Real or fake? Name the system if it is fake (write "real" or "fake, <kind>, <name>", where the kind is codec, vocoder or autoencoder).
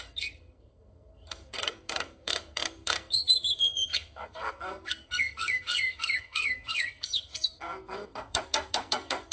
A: fake, codec, SNAC